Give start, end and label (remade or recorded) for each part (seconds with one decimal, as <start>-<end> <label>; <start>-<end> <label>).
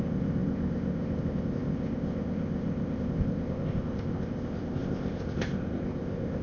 0.0-6.4 remade